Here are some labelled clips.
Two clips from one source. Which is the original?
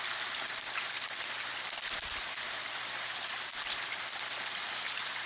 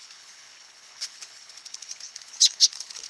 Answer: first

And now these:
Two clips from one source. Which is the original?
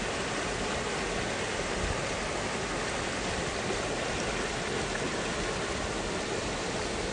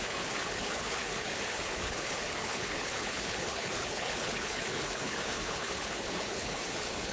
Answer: first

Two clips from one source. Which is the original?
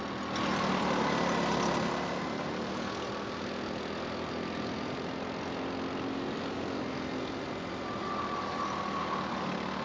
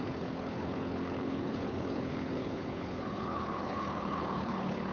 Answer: first